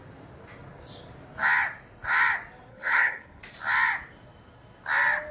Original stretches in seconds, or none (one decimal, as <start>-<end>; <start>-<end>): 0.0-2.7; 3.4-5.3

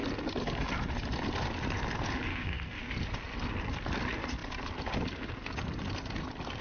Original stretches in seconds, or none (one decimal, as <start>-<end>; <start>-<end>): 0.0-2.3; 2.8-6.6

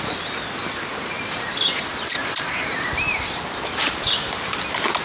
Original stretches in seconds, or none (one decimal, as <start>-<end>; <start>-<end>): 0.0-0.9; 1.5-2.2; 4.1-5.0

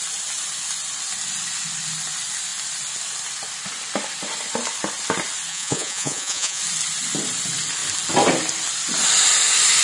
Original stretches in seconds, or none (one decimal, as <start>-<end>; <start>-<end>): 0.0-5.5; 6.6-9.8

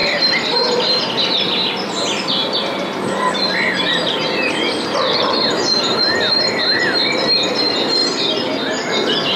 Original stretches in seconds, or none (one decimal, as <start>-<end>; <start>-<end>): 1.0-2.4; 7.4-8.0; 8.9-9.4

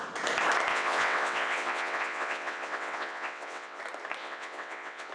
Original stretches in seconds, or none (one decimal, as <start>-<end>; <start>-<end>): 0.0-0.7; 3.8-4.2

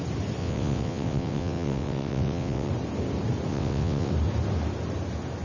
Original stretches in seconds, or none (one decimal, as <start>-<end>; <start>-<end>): 0.0-0.4; 2.7-3.5; 4.1-5.4